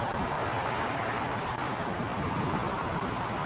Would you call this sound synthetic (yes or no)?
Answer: yes